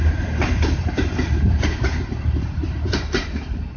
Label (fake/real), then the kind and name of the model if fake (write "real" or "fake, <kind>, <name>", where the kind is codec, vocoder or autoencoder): fake, vocoder, BigVGAN v2